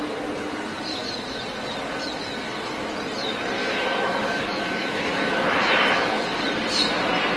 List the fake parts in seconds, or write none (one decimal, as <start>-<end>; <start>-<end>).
3.6-6.2